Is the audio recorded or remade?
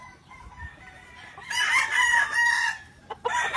recorded